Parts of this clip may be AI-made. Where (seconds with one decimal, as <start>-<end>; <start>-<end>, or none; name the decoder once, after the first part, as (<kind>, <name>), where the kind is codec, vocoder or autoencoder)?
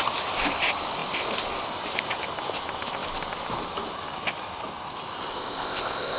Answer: 5.3-6.2 (codec, ZipCodec)